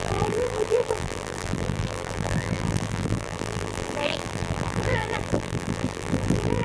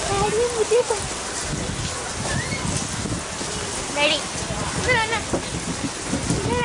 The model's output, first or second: first